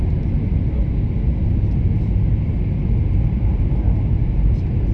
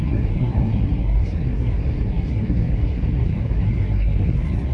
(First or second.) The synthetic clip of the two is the second